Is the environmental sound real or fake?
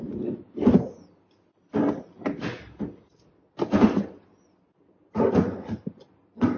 real